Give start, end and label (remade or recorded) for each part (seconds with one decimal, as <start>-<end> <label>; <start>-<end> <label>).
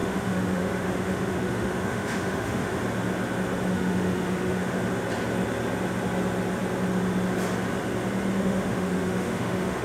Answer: 0.0-2.8 remade; 2.8-3.7 recorded; 3.7-4.8 remade; 4.8-8.4 recorded; 8.4-9.8 remade